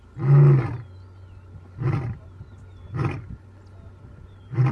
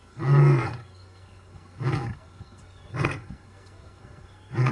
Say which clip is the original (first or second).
first